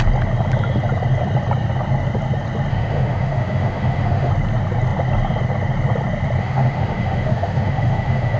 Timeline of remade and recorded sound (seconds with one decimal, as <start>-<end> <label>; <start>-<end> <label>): 0.0-2.7 recorded; 2.7-4.3 remade; 4.3-6.4 recorded; 6.4-8.4 remade